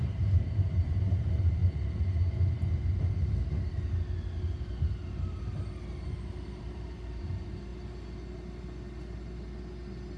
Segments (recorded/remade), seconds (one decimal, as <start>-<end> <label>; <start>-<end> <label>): 0.0-1.6 remade; 1.6-6.6 recorded; 6.6-7.7 remade; 7.7-10.2 recorded